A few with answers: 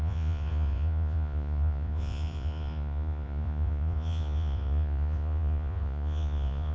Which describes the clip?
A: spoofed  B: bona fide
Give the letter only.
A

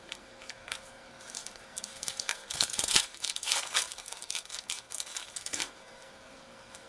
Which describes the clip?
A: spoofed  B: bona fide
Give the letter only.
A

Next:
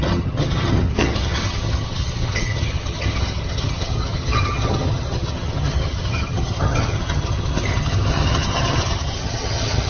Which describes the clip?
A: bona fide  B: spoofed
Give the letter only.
B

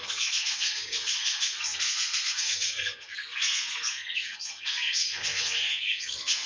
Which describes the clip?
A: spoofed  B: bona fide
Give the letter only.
A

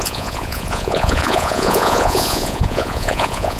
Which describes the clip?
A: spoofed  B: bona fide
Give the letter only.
A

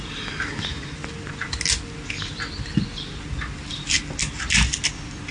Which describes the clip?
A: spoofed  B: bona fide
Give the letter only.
B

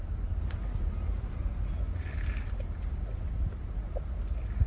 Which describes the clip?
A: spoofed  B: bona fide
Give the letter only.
B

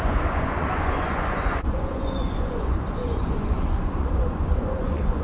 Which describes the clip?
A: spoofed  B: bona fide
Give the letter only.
A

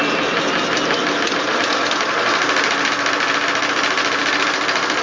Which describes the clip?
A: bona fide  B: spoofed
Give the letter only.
A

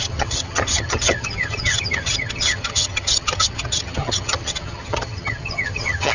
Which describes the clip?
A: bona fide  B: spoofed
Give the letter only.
B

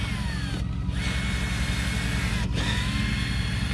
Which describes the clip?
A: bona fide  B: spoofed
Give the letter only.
A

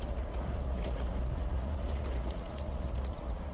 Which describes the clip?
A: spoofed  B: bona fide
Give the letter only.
A